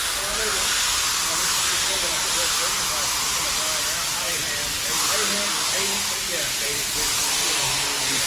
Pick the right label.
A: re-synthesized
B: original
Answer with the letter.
B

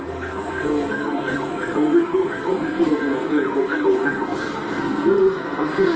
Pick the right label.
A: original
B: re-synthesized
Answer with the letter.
B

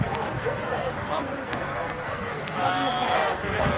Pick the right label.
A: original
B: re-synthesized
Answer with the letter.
B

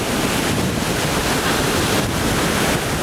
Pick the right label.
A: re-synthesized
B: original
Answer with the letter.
B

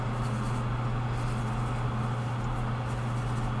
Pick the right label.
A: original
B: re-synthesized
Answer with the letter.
A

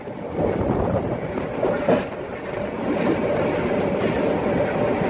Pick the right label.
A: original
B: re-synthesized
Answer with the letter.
A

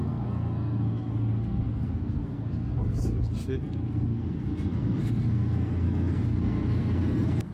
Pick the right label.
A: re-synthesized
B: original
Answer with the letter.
A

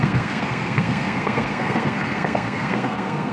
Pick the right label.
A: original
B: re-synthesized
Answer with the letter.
B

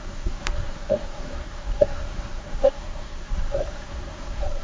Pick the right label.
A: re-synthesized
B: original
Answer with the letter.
A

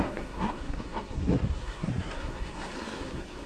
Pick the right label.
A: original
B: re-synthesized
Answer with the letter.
B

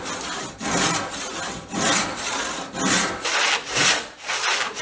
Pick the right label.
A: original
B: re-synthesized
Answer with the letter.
A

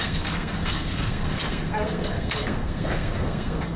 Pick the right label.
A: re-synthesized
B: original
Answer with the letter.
A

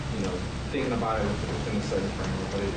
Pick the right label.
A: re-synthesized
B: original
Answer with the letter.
B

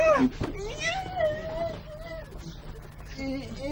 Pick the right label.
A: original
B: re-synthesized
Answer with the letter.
A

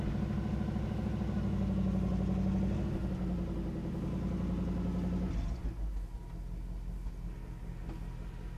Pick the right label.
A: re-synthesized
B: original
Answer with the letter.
B